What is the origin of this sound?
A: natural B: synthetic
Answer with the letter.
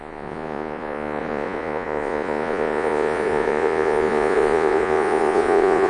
B